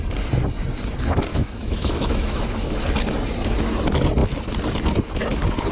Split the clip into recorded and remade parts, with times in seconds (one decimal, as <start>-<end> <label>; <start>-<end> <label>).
0.0-1.3 recorded; 1.3-2.8 remade; 2.8-5.7 recorded